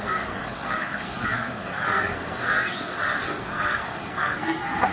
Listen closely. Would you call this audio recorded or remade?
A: remade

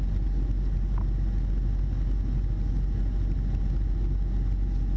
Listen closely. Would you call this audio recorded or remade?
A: recorded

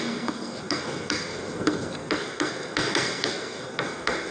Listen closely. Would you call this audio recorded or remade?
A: remade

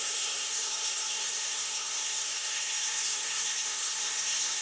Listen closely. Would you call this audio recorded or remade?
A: remade